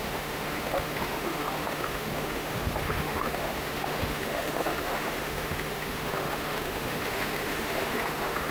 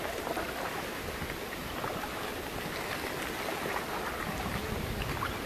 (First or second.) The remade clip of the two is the first